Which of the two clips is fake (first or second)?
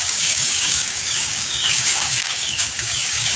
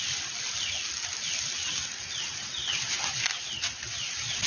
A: first